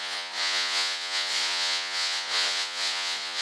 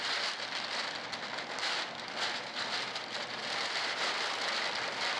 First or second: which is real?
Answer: second